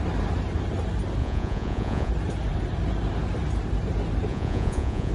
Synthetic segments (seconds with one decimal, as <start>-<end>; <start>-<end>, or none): 1.2-2.1; 4.3-5.1